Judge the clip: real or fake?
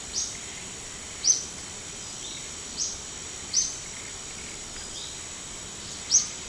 real